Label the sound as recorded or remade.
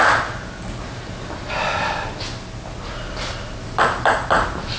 recorded